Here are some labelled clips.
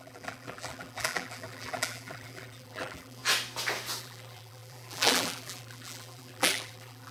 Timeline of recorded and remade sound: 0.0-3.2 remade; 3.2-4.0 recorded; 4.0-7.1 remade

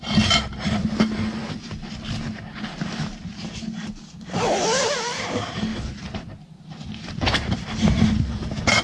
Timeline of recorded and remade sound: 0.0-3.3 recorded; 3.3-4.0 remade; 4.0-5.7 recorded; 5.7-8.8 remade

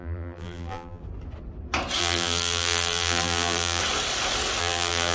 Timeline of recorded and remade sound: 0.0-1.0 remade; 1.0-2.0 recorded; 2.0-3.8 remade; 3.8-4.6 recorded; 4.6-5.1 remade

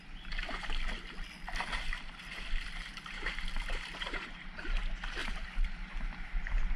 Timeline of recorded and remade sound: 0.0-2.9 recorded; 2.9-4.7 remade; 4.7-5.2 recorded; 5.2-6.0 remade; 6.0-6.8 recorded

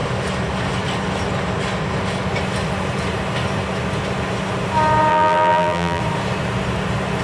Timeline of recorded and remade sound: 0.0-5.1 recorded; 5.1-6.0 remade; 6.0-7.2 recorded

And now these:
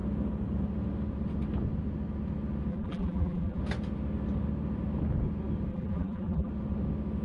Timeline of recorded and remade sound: 0.0-2.7 recorded; 2.7-3.6 remade; 3.6-5.7 recorded; 5.7-6.5 remade; 6.5-7.2 recorded

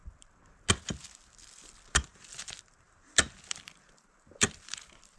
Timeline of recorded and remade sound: 0.0-1.6 recorded; 1.6-5.2 remade